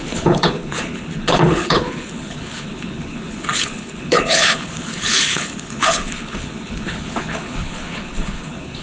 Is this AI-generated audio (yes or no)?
yes